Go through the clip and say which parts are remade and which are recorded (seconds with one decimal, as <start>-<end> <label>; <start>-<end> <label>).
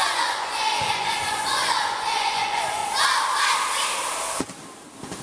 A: 0.0-2.8 remade; 2.8-5.2 recorded